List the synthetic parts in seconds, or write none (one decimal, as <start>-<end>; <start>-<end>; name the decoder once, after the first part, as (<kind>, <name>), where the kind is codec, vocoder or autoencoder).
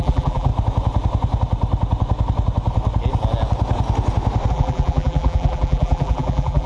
0.0-0.5 (vocoder, BigVGAN v2); 4.5-6.7